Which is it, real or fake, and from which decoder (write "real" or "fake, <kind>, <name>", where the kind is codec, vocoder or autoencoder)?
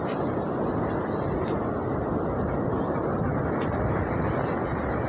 real